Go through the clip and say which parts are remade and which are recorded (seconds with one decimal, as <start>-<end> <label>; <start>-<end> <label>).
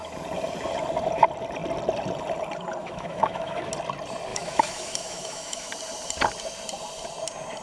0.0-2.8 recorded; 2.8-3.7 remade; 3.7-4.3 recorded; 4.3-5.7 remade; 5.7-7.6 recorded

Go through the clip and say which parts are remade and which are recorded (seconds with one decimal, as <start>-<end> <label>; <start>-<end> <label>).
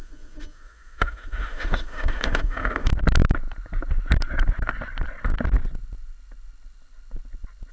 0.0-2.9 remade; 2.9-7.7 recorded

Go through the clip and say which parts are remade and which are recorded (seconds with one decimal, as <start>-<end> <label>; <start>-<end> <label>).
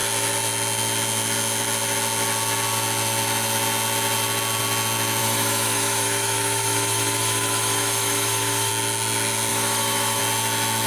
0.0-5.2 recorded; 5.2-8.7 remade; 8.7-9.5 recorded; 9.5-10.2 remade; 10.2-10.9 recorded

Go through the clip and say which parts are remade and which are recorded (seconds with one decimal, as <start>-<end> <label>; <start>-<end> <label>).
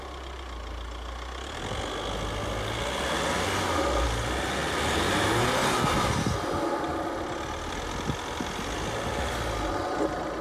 0.0-10.4 recorded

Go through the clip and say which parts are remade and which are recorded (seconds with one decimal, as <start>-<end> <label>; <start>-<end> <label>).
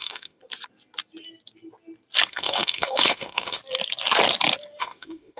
0.0-0.4 remade; 0.4-2.3 recorded; 2.3-3.6 remade; 3.6-4.8 recorded; 4.8-5.4 remade